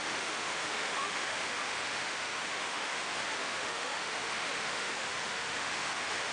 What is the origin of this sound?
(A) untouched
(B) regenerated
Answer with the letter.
B